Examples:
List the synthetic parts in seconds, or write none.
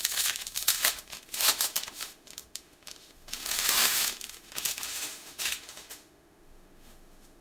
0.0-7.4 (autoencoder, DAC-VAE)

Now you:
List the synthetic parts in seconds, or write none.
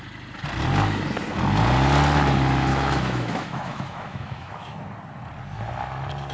2.7-4.8 (autoencoder, DAC-VAE)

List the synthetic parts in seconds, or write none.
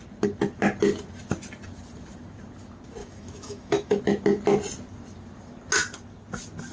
3.0-4.0 (autoencoder, DAC-VAE)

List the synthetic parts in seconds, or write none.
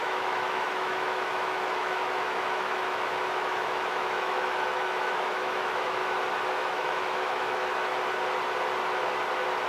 0.0-6.0 (autoencoder, DAC-VAE); 6.5-7.7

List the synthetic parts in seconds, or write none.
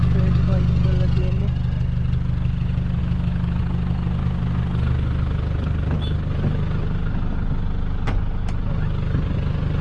3.0-3.6 (autoencoder, DAC-VAE)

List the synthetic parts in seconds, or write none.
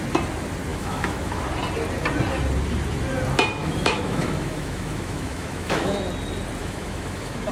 0.7-1.4 (autoencoder, DAC-VAE); 3.6-6.0; 6.6-7.5